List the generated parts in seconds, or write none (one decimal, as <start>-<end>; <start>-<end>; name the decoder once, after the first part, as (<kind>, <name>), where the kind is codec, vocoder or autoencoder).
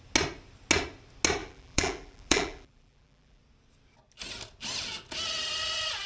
1.4-3.4 (vocoder, BigVGAN v2)